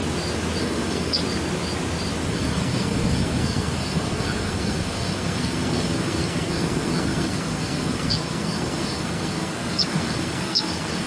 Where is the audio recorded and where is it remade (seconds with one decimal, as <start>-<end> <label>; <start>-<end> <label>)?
0.0-0.6 recorded; 0.6-1.2 remade; 1.2-2.3 recorded; 2.3-11.1 remade